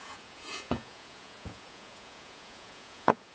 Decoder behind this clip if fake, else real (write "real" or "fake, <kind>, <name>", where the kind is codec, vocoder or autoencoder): fake, vocoder, Vocos